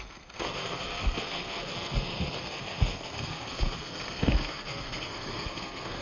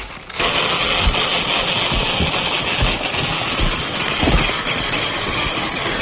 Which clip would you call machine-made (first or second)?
first